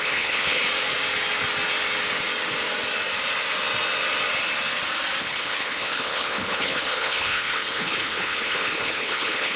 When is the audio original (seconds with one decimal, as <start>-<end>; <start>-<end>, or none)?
0.6-5.2